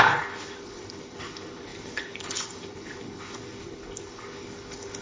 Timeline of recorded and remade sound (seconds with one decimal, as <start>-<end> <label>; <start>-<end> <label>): 0.0-5.0 remade